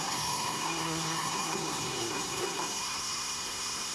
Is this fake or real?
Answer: fake